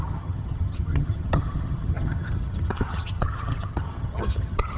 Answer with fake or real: fake